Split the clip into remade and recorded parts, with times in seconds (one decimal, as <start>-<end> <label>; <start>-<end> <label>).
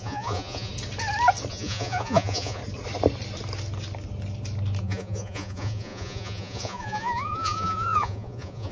0.0-0.7 remade; 0.7-1.5 recorded; 1.5-2.6 remade; 2.6-4.8 recorded; 4.8-8.7 remade